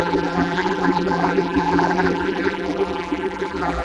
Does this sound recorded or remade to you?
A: remade